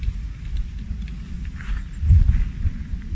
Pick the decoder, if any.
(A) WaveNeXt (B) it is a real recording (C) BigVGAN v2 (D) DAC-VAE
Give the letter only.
B